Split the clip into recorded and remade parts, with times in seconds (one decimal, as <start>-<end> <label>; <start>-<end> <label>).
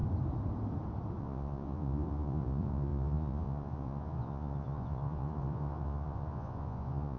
0.0-1.2 recorded; 1.2-7.2 remade